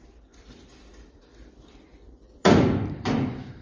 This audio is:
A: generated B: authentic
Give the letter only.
A